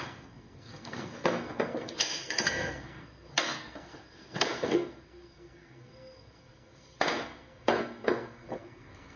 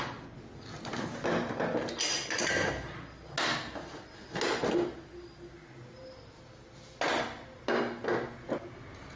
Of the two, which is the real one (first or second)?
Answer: second